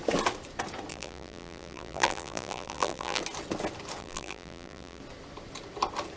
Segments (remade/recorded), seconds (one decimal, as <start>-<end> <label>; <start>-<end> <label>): 0.0-0.9 recorded; 0.9-3.2 remade; 3.2-4.0 recorded; 4.0-5.0 remade; 5.0-6.2 recorded